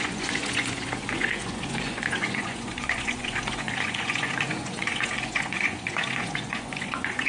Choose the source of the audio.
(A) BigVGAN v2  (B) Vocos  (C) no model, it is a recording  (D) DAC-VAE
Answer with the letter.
B